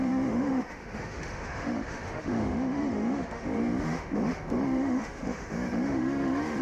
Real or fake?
fake